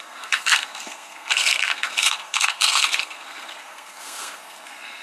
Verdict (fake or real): fake